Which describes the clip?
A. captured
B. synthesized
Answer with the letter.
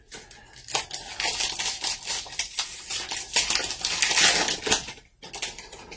A